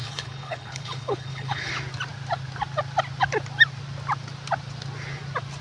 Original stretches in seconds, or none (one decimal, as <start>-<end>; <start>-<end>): 1.7-5.6